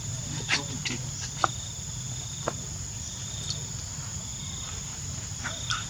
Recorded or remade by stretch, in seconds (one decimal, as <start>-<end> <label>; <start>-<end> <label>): 0.0-0.8 remade; 0.8-3.8 recorded; 3.8-4.3 remade; 4.3-5.0 recorded; 5.0-5.9 remade

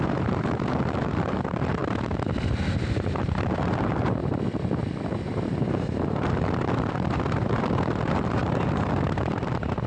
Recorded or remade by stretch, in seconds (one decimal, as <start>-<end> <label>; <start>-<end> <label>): 0.0-1.8 remade; 1.8-2.6 recorded; 2.6-4.2 remade; 4.2-5.1 recorded; 5.1-9.9 remade